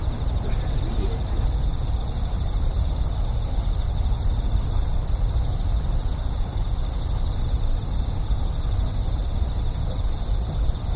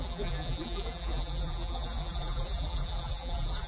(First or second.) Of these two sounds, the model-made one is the second